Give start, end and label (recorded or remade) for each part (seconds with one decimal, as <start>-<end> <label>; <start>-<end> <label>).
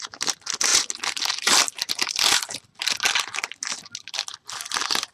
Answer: 0.0-5.1 recorded